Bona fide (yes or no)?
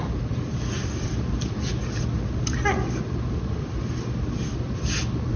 yes